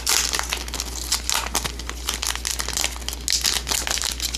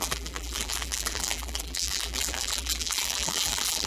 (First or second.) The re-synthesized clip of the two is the second